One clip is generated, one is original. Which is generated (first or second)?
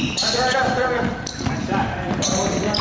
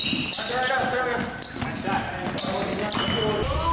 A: first